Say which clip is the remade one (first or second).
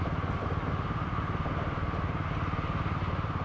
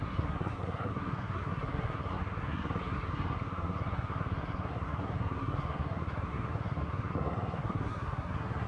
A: second